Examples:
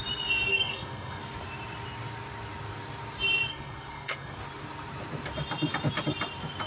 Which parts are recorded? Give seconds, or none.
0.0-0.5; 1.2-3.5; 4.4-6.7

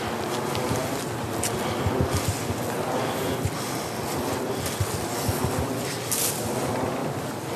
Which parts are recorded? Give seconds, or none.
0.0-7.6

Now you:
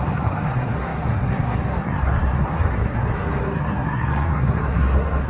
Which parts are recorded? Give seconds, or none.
none

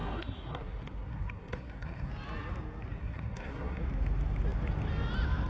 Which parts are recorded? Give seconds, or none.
2.1-3.0; 3.8-5.5

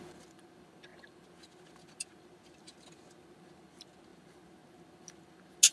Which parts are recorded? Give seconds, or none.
0.0-5.7